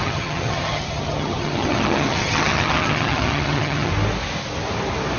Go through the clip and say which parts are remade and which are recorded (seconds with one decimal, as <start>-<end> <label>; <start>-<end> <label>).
0.0-3.9 remade; 3.9-5.2 recorded